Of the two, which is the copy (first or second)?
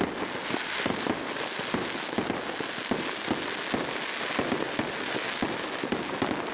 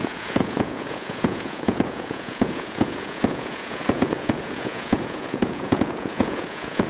second